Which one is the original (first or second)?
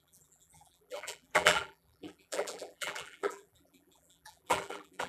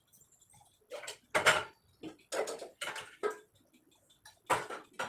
second